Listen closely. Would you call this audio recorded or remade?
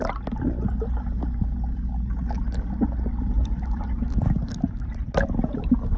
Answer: recorded